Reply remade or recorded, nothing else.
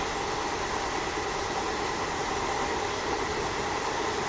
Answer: recorded